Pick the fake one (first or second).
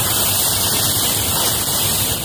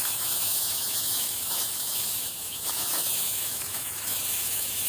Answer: second